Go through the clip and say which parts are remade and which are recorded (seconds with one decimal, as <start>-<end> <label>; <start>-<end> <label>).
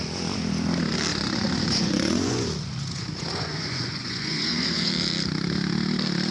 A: 0.0-1.1 recorded; 1.1-4.9 remade; 4.9-6.3 recorded